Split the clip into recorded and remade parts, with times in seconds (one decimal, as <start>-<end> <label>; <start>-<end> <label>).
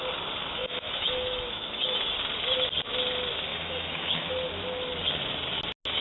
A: 0.0-0.6 recorded; 0.6-2.0 remade; 2.0-3.5 recorded; 3.5-4.3 remade; 4.3-6.0 recorded